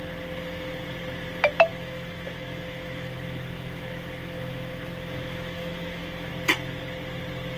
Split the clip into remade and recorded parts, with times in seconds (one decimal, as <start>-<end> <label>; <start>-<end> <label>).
0.0-1.7 recorded; 1.7-6.3 remade; 6.3-7.6 recorded